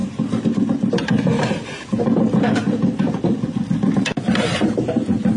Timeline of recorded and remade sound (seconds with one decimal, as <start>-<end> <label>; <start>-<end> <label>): 0.0-5.4 recorded

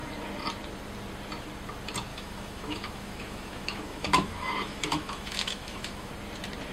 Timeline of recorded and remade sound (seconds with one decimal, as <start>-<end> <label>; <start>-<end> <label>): 0.0-2.1 recorded; 2.1-6.1 remade; 6.1-6.7 recorded

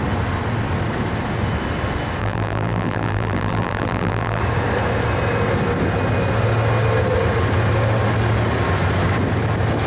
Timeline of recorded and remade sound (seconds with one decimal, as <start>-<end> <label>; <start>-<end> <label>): 0.0-2.2 recorded; 2.2-4.4 remade; 4.4-9.9 recorded

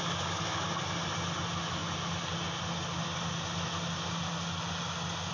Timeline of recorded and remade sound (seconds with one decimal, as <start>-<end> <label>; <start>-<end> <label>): 0.0-5.3 recorded

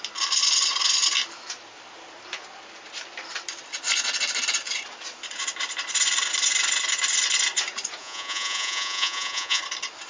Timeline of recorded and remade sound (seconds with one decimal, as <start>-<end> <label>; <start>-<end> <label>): 0.0-8.0 recorded; 8.0-9.6 remade; 9.6-10.1 recorded

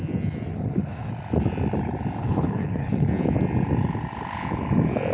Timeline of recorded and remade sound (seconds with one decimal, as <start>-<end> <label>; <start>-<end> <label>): 0.0-0.5 recorded; 0.5-1.1 remade; 1.1-2.2 recorded; 2.2-3.1 remade; 3.1-5.1 recorded

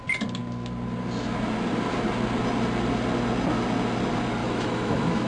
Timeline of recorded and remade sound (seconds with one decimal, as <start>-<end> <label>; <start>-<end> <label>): 0.0-4.4 recorded; 4.4-5.3 remade

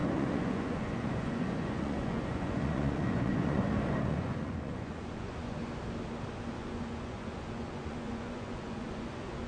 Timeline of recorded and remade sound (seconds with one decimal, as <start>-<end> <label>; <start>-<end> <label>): 0.0-5.6 remade; 5.6-6.5 recorded; 6.5-9.5 remade